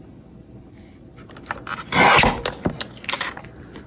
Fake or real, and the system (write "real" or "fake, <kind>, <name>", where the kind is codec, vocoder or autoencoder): real